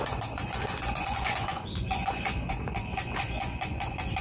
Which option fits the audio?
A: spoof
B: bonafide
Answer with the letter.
A